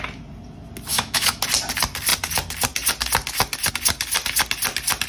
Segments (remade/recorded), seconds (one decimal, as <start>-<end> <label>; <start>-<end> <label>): 0.0-0.9 recorded; 0.9-1.4 remade; 1.4-5.1 recorded